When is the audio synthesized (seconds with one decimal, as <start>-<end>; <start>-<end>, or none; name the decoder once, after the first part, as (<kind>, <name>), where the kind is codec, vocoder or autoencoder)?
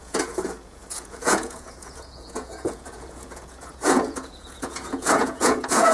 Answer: 0.0-5.9 (vocoder, Vocos)